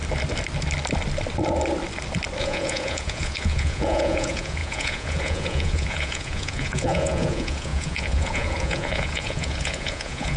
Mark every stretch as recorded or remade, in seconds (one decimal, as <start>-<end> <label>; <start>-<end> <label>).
0.0-2.4 recorded; 2.4-10.4 remade